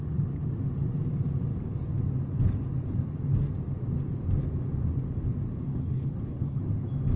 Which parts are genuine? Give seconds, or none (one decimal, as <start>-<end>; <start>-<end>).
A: 0.0-5.7; 6.6-7.2